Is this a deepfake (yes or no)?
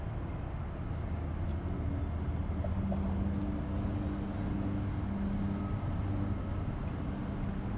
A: no